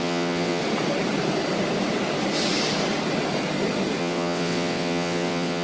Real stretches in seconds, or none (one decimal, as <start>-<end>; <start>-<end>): 0.6-4.0